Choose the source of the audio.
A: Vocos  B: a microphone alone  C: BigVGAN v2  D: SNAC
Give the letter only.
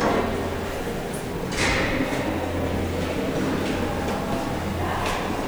B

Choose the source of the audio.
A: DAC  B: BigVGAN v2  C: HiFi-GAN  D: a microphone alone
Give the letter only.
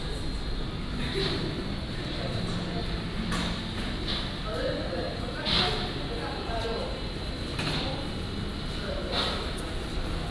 D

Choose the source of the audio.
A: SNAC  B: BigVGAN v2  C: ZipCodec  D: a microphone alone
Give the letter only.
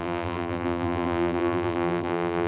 B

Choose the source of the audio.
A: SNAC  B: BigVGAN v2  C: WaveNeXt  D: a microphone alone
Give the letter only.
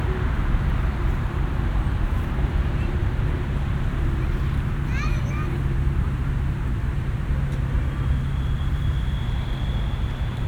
B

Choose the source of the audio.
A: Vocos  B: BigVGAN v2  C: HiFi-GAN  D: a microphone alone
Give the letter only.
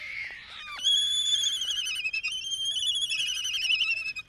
B